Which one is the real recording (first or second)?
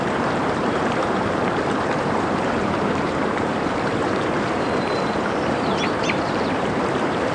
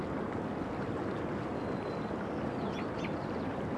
second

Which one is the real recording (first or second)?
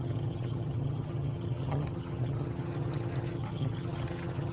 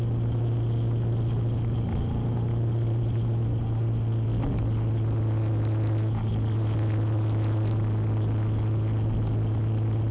second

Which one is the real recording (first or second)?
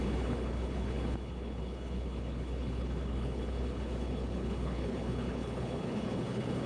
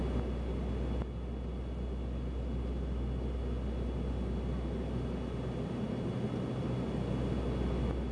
second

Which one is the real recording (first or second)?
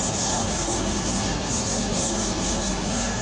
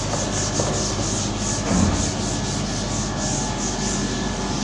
second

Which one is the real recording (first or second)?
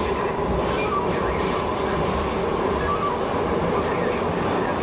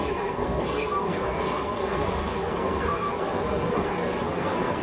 first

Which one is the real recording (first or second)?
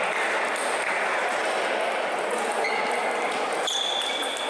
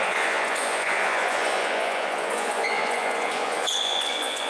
first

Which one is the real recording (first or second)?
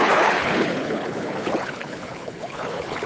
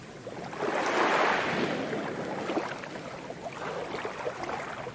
second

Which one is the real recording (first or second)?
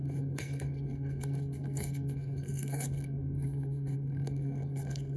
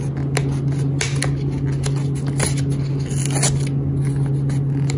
second